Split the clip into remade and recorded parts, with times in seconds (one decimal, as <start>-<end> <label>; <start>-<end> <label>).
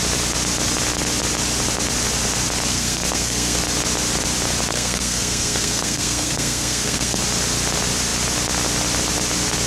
0.0-2.7 recorded; 2.7-3.6 remade; 3.6-4.7 recorded; 4.7-7.2 remade; 7.2-9.7 recorded